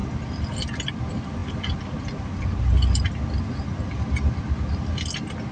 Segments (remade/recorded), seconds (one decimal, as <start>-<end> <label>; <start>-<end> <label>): 0.0-5.5 recorded